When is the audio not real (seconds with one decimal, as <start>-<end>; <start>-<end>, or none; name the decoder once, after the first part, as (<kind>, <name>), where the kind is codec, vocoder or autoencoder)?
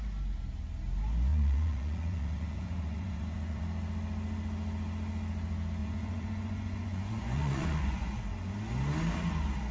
1.3-3.6 (vocoder, Vocos); 5.8-8.2